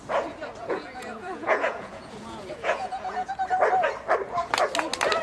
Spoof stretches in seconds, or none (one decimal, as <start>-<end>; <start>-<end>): 0.6-3.3